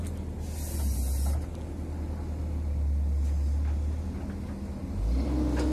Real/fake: real